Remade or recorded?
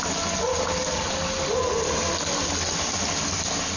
recorded